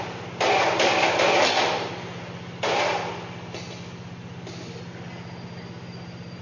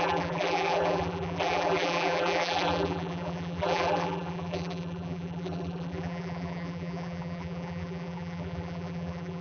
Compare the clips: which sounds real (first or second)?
first